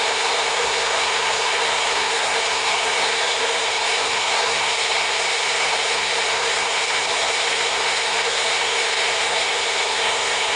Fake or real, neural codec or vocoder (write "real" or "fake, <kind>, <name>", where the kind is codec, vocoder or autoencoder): fake, codec, SNAC